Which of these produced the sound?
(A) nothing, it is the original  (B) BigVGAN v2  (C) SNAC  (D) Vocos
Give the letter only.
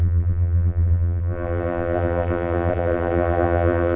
B